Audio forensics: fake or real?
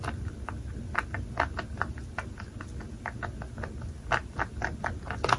real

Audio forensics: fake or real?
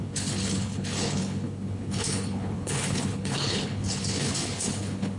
fake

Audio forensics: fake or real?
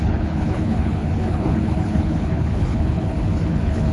fake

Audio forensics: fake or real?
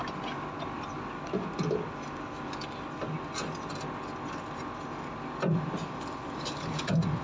real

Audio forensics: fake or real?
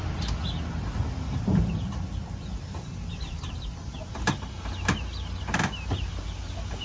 real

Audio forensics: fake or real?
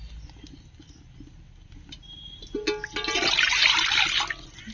real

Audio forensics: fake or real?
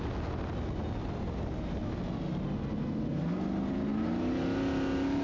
real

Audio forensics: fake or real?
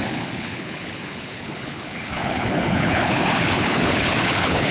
fake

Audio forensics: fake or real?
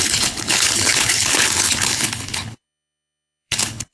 fake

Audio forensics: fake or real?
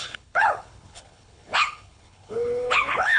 fake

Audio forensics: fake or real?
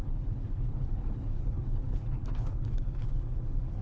fake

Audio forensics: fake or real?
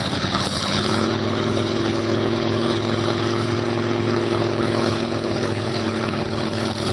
fake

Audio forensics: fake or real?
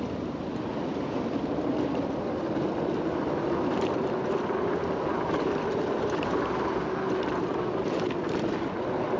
real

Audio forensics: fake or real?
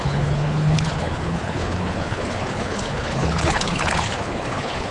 fake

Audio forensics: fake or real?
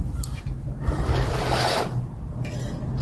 real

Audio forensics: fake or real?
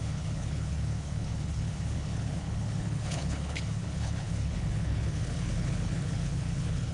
fake